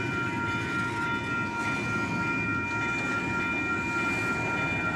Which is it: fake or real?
real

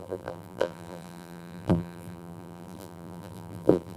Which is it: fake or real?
fake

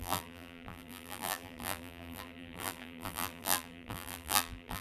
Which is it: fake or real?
fake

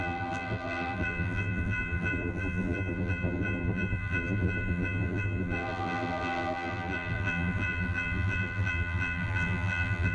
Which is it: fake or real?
fake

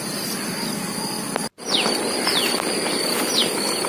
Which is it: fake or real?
real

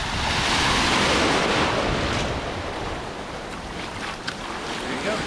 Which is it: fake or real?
fake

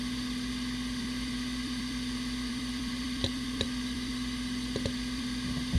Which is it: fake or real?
fake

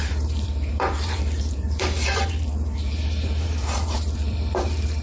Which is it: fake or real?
fake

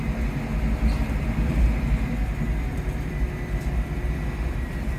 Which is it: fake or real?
real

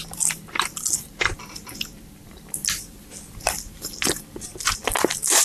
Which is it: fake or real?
real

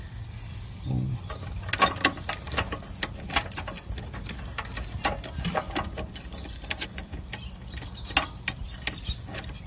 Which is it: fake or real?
real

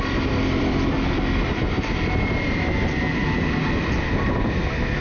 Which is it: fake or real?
fake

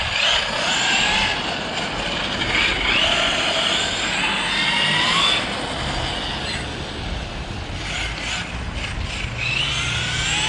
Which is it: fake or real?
real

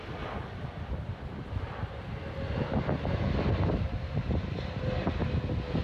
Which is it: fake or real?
real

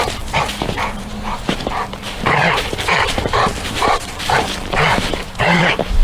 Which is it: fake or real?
fake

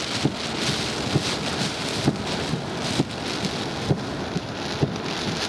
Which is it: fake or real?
real